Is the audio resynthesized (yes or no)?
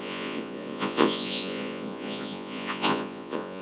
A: yes